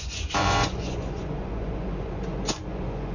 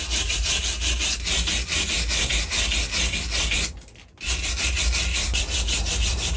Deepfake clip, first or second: first